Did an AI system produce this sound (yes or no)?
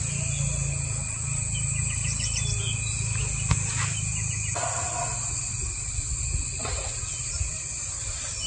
no